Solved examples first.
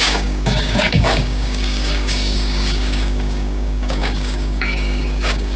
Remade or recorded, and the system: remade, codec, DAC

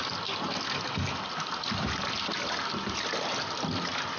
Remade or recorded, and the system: recorded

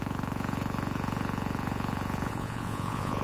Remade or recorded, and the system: remade, vocoder, Vocos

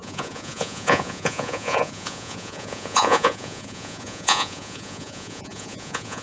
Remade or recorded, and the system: remade, vocoder, Vocos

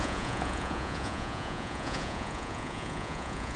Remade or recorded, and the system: remade, vocoder, Vocos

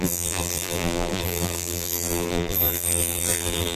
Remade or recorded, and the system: remade, vocoder, BigVGAN v2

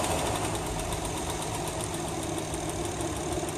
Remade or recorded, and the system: recorded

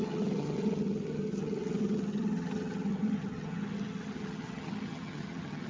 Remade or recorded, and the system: remade, vocoder, HiFi-GAN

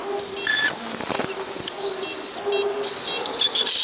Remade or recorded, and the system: recorded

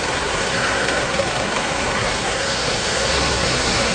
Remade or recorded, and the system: remade, codec, SNAC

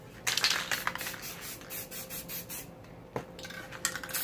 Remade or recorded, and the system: recorded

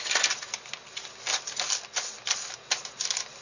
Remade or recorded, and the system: recorded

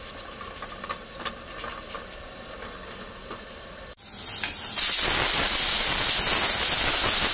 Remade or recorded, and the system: recorded